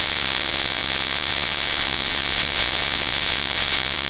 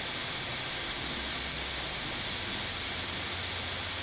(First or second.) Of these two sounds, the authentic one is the second